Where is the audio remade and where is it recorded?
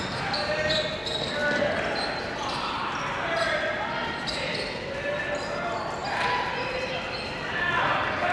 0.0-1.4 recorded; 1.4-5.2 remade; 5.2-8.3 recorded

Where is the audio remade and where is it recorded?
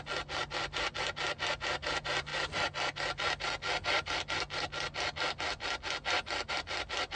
0.0-7.2 recorded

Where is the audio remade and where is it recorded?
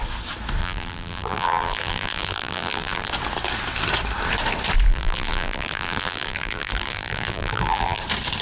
0.0-0.6 recorded; 0.6-3.1 remade; 3.1-4.9 recorded; 4.9-8.0 remade; 8.0-8.4 recorded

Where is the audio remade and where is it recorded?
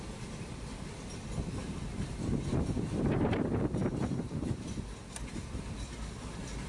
0.0-1.6 recorded; 1.6-5.6 remade; 5.6-6.7 recorded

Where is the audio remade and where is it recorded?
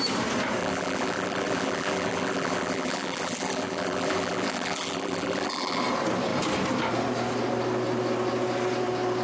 0.0-0.6 recorded; 0.6-5.8 remade; 5.8-9.2 recorded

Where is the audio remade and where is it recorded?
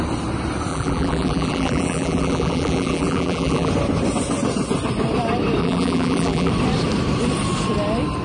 0.0-0.7 recorded; 0.7-3.7 remade; 3.7-5.6 recorded; 5.6-6.5 remade; 6.5-8.2 recorded